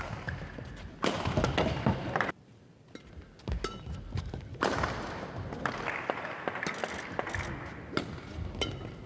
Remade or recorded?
recorded